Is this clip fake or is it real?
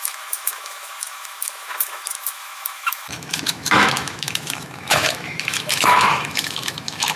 fake